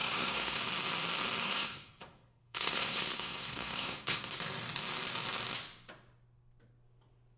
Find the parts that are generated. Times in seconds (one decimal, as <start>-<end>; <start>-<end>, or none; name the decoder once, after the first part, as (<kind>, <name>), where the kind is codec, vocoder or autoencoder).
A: 0.0-0.6 (codec, SNAC); 1.4-4.3